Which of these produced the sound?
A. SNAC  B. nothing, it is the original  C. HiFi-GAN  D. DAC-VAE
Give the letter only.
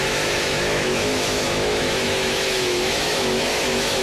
D